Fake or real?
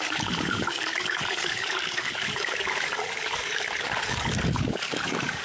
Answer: fake